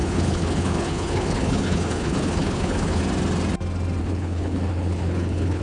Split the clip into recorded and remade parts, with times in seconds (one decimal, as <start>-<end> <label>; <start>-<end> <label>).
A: 0.0-3.0 remade; 3.0-4.0 recorded; 4.0-5.6 remade